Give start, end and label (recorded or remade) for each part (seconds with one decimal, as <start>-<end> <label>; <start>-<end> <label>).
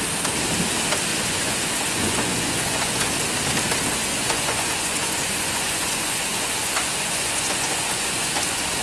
0.0-1.1 recorded; 1.1-3.1 remade; 3.1-4.1 recorded; 4.1-8.8 remade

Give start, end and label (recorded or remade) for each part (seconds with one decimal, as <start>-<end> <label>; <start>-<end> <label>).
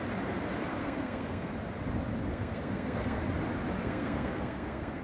0.0-0.7 recorded; 0.7-1.5 remade; 1.5-2.3 recorded; 2.3-3.2 remade; 3.2-3.8 recorded; 3.8-5.0 remade